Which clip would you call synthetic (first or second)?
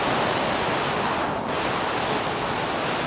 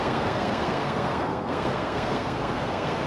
second